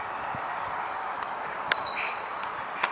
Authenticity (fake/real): real